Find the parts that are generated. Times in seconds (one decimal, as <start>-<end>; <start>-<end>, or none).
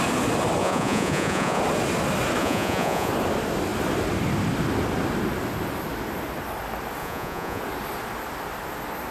0.6-1.6; 2.4-3.1; 7.0-7.6